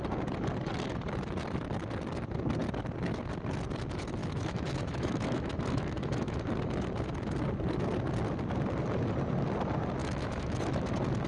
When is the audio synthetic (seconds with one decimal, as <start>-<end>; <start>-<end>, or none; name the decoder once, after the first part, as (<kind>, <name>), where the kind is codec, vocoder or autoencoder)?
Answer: 4.2-6.4 (autoencoder, DAC-VAE); 10.0-10.9